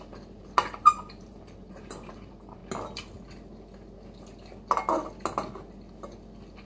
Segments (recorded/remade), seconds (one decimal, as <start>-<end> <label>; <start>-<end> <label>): 0.0-2.6 remade; 2.6-6.7 recorded